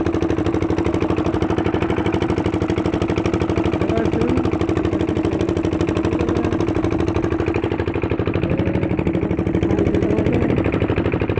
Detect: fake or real real